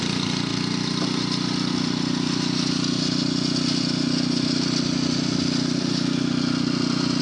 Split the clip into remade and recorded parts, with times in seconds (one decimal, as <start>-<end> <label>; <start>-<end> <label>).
0.0-7.2 recorded